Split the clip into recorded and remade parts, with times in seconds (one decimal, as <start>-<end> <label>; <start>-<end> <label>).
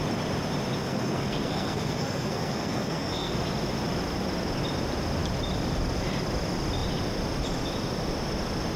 0.0-0.8 recorded; 0.8-3.3 remade; 3.3-8.8 recorded